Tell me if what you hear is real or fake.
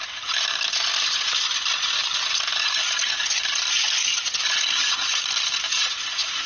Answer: real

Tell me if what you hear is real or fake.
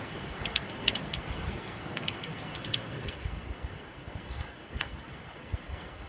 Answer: fake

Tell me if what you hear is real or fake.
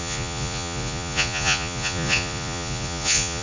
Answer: fake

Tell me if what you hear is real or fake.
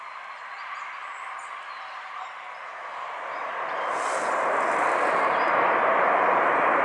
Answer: real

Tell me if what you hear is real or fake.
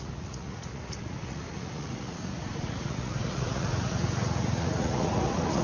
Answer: fake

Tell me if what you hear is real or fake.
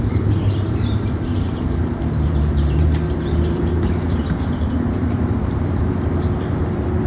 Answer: fake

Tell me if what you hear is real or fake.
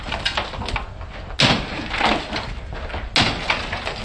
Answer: real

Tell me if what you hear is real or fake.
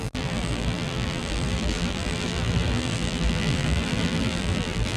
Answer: fake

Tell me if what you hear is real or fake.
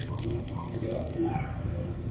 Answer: fake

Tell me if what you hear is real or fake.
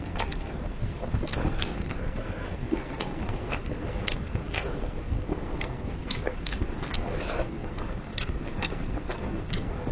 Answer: fake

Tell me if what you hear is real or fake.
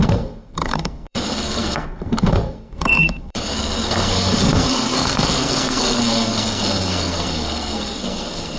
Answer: fake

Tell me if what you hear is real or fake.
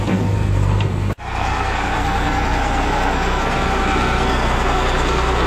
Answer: fake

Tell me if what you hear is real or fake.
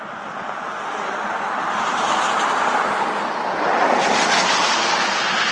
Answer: fake